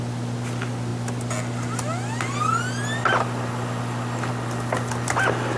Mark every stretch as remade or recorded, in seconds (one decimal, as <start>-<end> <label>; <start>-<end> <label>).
0.0-5.6 recorded